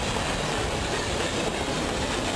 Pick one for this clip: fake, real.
fake